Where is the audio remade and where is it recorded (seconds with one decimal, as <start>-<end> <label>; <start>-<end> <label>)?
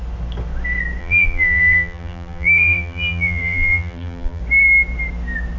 0.0-1.0 recorded; 1.0-4.4 remade; 4.4-5.6 recorded